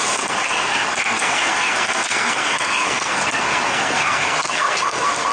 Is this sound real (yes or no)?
no